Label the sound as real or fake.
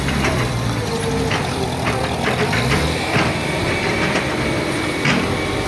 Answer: fake